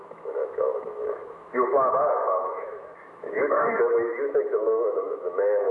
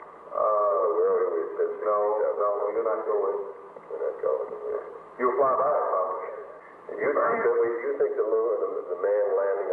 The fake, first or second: first